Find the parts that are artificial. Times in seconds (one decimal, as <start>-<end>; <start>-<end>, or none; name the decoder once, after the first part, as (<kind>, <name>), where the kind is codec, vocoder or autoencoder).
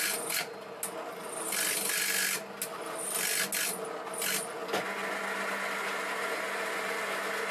none